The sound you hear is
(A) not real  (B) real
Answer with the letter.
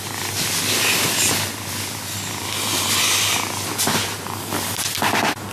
B